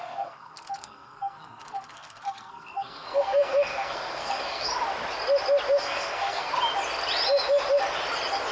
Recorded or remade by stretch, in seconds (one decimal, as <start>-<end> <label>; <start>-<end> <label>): 0.0-4.7 remade; 4.7-5.8 recorded; 5.8-6.5 remade; 6.5-8.5 recorded